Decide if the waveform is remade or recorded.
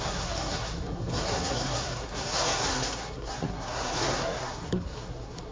remade